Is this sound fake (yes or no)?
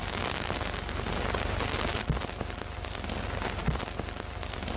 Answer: no